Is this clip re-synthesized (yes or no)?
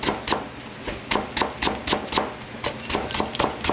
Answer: no